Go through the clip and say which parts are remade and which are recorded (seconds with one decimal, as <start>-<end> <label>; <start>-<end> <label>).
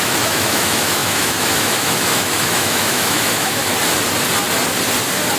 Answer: 0.0-3.7 remade; 3.7-5.4 recorded